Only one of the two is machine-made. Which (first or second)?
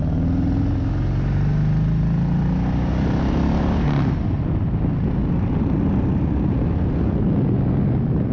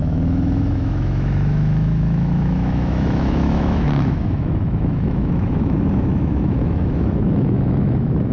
second